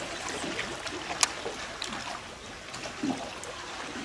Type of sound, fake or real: real